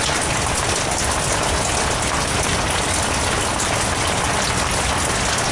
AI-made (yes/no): no